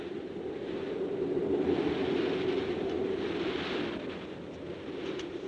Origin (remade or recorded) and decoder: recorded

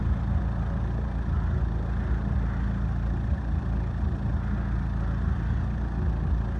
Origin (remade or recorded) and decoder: recorded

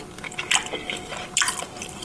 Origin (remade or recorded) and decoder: recorded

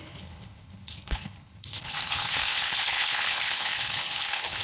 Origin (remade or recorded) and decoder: remade, codec, HILCodec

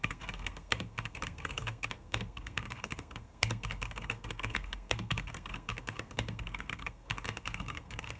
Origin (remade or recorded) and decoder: remade, codec, SNAC